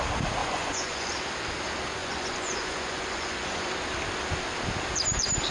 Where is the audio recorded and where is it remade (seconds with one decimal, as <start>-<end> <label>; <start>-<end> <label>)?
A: 0.0-0.4 recorded; 0.4-1.1 remade; 1.1-2.0 recorded; 2.0-3.7 remade; 3.7-5.5 recorded